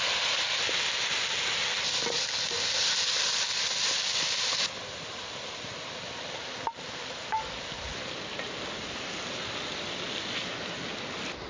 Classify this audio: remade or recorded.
recorded